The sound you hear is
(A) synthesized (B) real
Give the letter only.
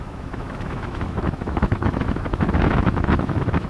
A